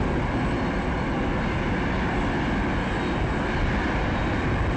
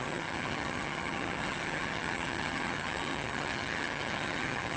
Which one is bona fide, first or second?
first